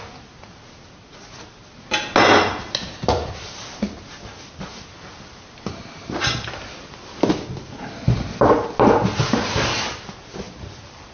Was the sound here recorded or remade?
recorded